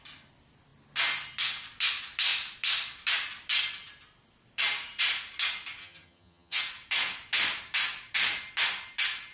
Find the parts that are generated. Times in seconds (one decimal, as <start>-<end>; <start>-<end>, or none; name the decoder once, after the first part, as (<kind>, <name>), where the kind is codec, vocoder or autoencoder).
5.8-6.6 (vocoder, HiFi-GAN)

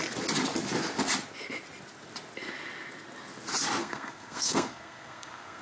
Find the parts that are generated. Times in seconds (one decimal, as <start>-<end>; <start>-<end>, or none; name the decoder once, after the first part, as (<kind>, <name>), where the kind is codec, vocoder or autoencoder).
3.8-5.6 (codec, SNAC)